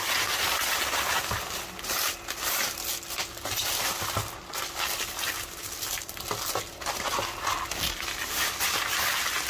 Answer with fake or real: real